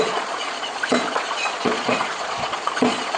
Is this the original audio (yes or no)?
no